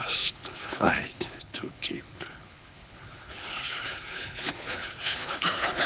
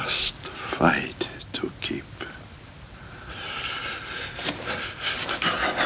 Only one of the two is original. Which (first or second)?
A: second